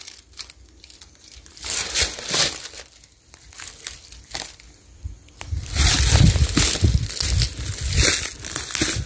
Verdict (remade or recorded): recorded